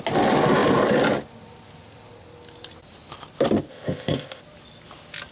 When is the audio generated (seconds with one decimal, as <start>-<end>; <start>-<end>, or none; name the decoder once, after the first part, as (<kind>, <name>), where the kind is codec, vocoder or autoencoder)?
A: 3.7-4.4 (codec, ZipCodec)